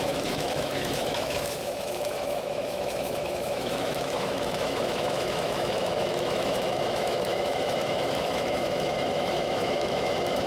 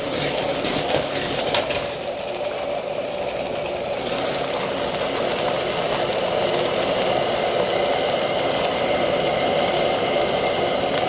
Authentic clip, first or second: second